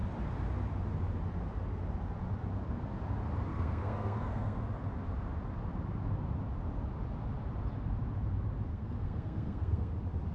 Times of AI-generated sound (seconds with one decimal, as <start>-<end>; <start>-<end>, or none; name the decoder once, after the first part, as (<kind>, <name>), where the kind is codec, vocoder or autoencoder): 3.5-4.6 (codec, SNAC); 8.7-9.9